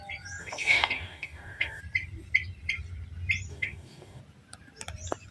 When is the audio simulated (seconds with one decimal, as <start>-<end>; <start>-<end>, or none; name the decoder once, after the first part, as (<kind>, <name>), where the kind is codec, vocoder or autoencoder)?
0.4-1.8 (codec, DAC); 3.5-4.2